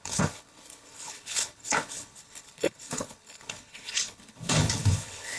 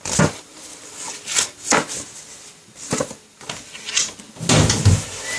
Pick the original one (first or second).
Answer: second